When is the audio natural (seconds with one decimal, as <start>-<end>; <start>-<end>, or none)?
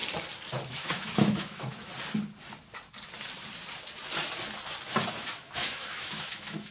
0.0-0.7; 1.9-5.1